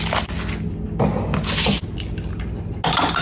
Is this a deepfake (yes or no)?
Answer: no